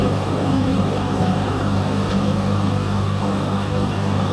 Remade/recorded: remade